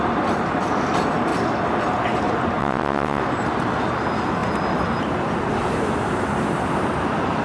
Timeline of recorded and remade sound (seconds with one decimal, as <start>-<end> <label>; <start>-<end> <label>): 0.0-2.6 recorded; 2.6-3.2 remade; 3.2-7.4 recorded